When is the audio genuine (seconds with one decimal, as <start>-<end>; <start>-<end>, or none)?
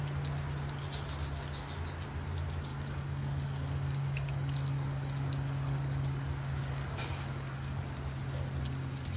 0.0-2.7; 7.8-9.2